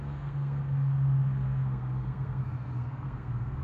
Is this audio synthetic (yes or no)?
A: yes